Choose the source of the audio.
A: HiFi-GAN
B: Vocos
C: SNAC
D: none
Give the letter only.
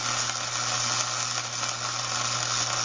D